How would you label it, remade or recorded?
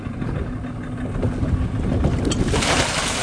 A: recorded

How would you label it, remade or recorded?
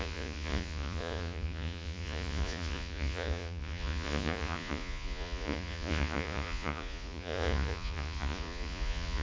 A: remade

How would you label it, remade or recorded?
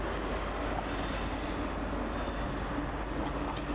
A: recorded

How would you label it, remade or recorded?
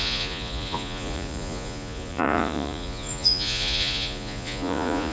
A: remade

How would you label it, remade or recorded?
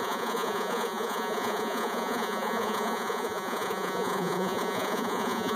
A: remade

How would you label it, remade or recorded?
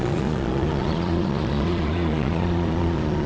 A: remade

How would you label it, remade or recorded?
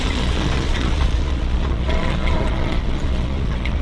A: remade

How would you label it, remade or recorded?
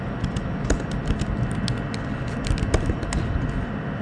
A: recorded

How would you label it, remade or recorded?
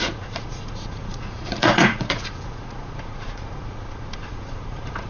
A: remade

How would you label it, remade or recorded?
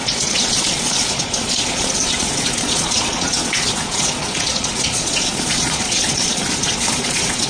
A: remade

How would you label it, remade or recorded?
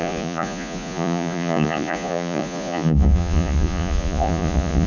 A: remade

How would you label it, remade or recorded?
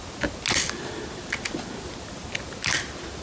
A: recorded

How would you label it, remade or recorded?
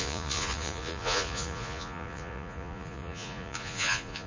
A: remade